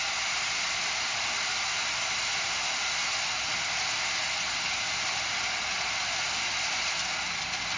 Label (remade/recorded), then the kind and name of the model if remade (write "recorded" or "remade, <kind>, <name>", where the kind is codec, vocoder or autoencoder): recorded